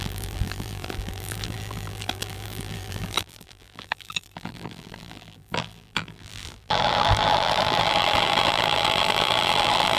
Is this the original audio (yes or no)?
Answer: no